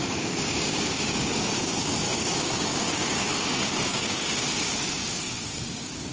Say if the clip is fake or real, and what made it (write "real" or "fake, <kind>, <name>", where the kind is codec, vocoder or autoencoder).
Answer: fake, codec, DAC